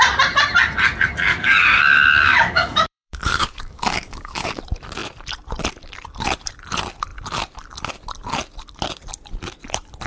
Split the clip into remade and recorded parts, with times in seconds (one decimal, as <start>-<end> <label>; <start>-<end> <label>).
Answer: 0.0-1.3 recorded; 1.3-4.6 remade; 4.6-10.1 recorded